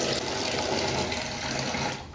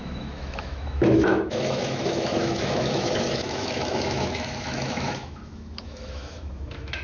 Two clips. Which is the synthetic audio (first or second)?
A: second